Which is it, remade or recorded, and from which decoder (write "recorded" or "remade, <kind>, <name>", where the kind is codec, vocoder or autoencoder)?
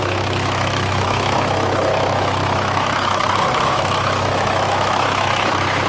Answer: remade, autoencoder, DAC-VAE